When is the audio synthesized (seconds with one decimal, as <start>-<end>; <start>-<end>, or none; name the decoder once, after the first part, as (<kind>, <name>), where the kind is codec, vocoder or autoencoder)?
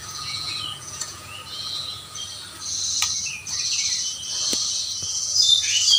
0.0-2.2 (vocoder, Vocos)